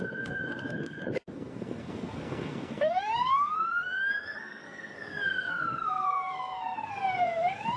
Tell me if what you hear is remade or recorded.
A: remade